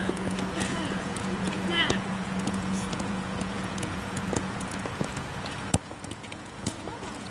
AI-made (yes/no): yes